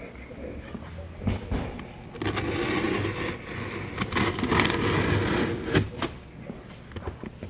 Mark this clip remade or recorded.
recorded